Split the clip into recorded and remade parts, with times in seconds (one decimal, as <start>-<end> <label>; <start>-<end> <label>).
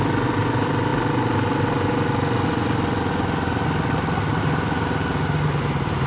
0.0-6.1 recorded